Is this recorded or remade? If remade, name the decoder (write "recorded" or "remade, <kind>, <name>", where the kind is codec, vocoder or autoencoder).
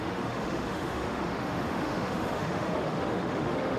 remade, autoencoder, DAC-VAE